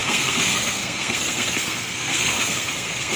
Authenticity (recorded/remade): remade